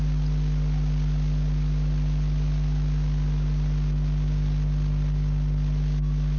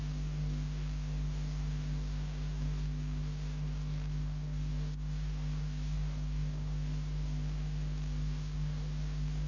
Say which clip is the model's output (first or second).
second